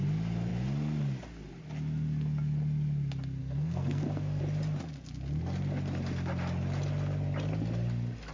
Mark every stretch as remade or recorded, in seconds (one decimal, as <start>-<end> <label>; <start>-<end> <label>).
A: 0.0-3.4 recorded; 3.4-4.4 remade; 4.4-8.3 recorded